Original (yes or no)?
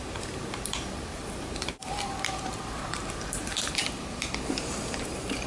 no